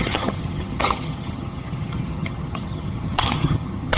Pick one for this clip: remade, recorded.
remade